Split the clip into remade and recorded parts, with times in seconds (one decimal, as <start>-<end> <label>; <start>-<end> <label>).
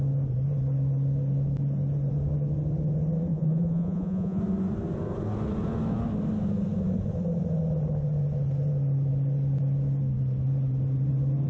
0.0-3.3 recorded; 3.3-4.4 remade; 4.4-11.5 recorded